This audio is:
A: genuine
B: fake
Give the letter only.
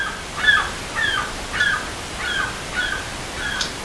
B